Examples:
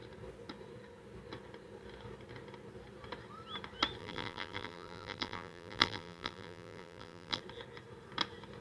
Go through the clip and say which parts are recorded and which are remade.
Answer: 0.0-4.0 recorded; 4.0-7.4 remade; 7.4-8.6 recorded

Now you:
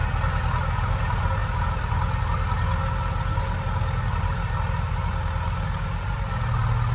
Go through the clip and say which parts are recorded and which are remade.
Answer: 0.0-6.9 recorded

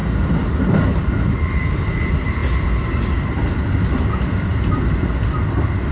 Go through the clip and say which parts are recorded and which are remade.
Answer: 0.0-5.9 recorded

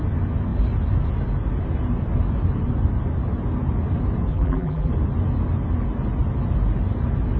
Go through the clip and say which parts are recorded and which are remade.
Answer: 0.0-4.3 recorded; 4.3-4.9 remade; 4.9-7.4 recorded

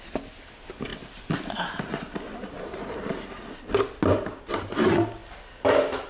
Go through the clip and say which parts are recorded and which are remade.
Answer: 0.0-6.1 recorded